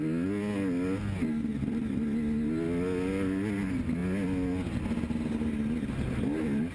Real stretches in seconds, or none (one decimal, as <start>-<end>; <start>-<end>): 0.0-6.7